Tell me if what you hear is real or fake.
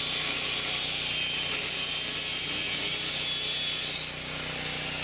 real